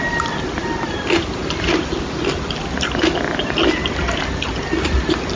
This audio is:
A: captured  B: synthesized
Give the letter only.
A